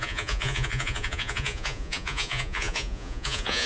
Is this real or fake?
fake